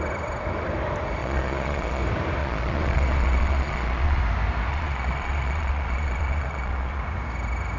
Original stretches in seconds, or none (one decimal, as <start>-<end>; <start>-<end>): 0.0-1.2; 2.0-2.4; 4.2-4.7; 7.0-7.8